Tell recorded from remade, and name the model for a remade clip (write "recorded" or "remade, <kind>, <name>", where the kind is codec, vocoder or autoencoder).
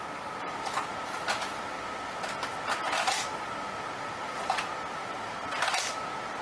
recorded